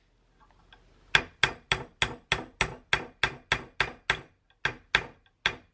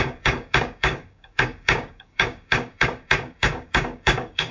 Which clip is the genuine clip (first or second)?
first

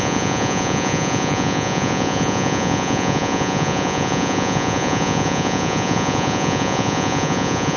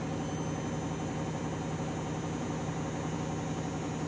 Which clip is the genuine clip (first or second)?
second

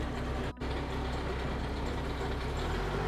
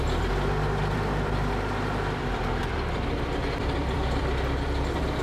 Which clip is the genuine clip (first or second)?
first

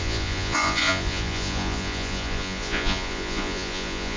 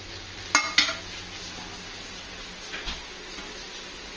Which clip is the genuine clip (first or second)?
second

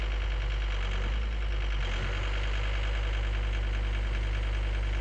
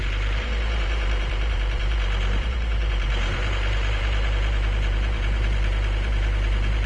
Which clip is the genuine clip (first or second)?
first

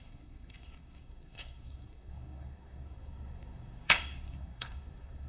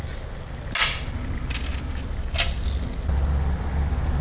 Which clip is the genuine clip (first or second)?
second